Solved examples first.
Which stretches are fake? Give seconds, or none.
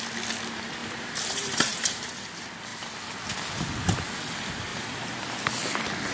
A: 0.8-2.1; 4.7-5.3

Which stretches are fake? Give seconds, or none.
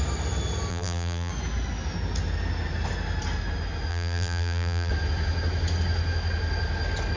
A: 0.7-1.3; 3.9-4.9